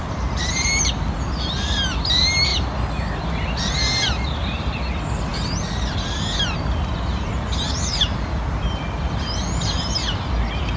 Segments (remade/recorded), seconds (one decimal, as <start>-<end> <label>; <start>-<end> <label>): 0.0-10.8 recorded